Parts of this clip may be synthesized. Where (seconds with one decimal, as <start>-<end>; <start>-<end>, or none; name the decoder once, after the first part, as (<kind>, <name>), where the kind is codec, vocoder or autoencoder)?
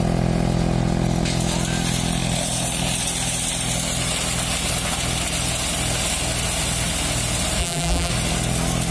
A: 7.6-8.1 (vocoder, BigVGAN v2)